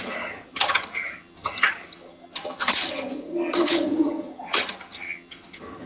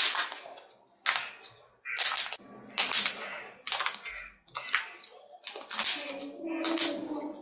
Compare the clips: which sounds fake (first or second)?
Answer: first